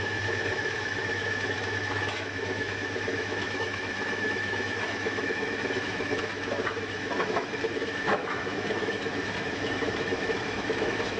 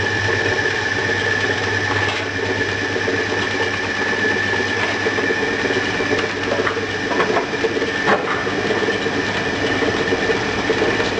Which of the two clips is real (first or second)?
second